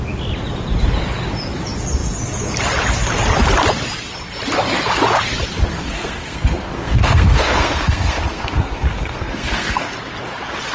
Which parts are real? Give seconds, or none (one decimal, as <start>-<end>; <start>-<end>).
0.0-5.7; 9.9-10.7